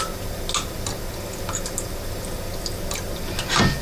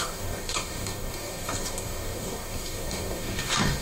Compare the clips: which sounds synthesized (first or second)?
second